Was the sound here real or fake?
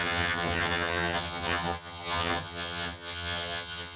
fake